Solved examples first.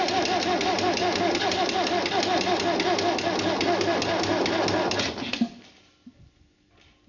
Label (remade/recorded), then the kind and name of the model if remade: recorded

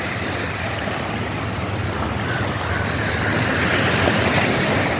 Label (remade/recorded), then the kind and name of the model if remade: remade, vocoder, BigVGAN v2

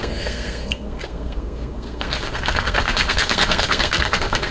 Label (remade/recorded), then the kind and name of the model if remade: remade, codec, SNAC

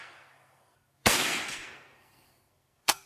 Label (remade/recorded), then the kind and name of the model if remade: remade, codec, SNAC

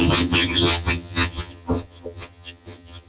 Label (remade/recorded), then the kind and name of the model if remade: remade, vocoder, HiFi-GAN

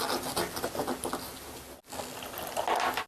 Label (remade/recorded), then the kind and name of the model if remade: recorded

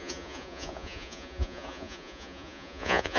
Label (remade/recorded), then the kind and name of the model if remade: remade, vocoder, Vocos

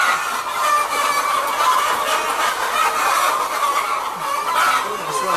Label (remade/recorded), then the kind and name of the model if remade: recorded